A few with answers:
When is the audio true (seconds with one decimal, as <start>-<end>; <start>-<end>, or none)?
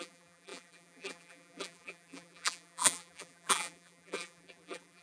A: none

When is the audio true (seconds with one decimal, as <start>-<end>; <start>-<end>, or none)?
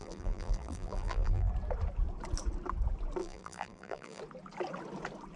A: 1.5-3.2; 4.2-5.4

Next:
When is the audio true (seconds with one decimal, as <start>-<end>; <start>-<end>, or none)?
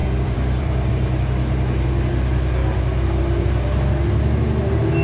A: 0.9-5.0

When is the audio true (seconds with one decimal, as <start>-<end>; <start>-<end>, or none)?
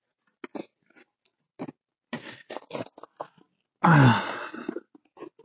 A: 0.0-5.4